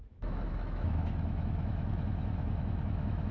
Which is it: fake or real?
fake